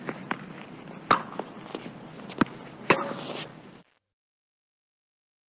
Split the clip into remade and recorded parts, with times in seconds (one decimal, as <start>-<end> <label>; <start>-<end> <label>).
0.0-5.5 recorded